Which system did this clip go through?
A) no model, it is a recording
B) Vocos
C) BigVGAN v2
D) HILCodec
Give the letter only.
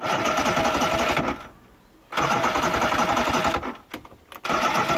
A